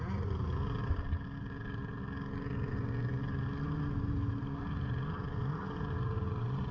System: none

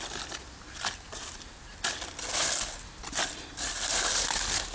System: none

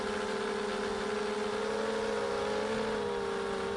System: none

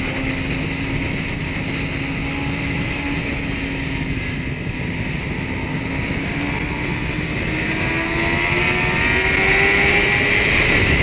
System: none